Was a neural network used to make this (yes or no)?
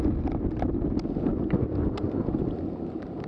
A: no